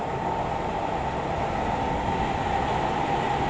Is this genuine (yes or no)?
yes